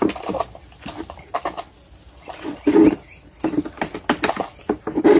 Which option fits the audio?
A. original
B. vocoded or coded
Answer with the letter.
A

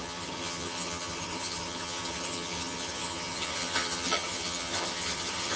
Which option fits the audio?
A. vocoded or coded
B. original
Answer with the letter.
A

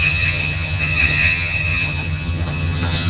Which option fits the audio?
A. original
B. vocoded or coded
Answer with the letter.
B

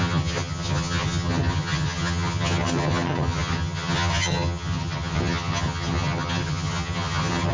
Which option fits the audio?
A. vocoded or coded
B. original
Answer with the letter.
A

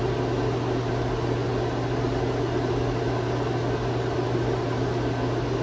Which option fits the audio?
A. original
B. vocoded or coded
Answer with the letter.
A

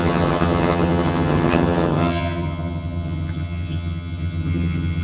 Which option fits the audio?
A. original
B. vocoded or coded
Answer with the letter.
B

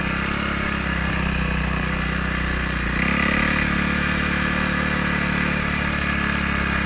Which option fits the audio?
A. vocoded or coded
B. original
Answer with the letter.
B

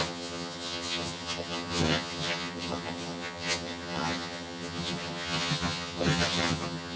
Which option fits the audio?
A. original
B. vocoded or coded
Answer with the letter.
B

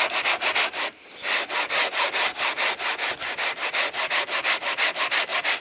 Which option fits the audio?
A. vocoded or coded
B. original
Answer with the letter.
B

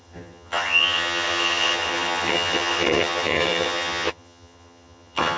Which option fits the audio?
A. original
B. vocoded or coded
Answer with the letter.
B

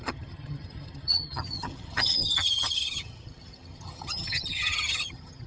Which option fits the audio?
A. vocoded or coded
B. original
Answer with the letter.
A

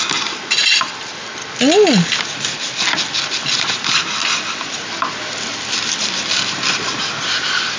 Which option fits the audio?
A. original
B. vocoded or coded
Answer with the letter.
A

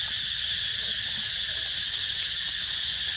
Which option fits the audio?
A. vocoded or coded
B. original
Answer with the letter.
B